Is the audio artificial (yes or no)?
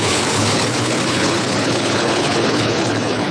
yes